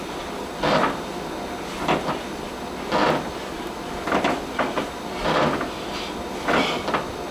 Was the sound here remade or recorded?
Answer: recorded